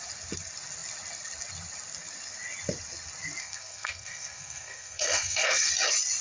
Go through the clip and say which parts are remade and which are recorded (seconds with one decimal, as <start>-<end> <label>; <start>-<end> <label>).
0.0-3.4 recorded; 3.4-5.7 remade; 5.7-6.2 recorded